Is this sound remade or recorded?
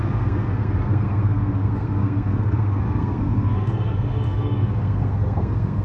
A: remade